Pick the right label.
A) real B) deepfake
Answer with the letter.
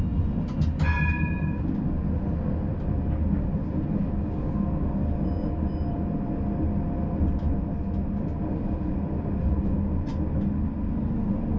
A